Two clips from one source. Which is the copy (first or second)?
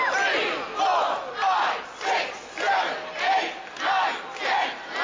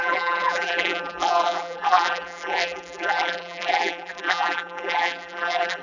second